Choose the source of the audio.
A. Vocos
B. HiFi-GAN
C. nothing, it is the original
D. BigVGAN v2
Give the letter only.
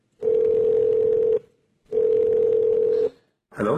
C